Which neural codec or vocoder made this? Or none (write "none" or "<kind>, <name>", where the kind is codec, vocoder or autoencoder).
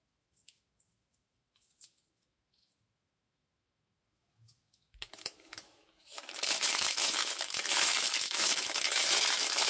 autoencoder, DAC-VAE